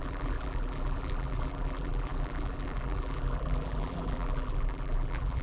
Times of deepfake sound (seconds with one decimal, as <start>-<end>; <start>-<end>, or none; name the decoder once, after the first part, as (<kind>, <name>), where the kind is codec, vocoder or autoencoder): 0.0-5.4 (vocoder, BigVGAN v2)